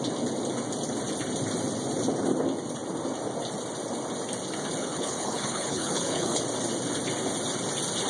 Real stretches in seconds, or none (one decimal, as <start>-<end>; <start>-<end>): 0.0-4.8; 6.4-8.1